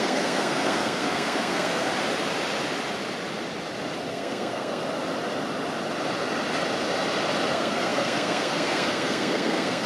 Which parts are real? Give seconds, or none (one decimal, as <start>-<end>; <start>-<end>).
1.9-4.1; 4.8-7.5